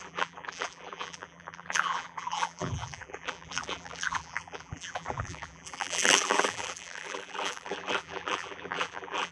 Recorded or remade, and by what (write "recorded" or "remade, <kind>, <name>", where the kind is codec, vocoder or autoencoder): remade, vocoder, BigVGAN v2